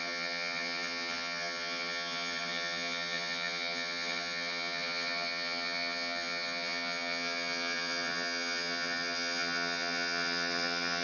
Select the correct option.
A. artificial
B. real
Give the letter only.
A